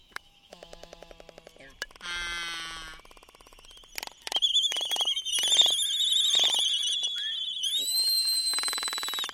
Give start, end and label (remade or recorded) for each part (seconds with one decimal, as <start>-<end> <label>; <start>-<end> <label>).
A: 0.0-1.1 remade; 1.1-4.5 recorded; 4.5-5.3 remade; 5.3-9.3 recorded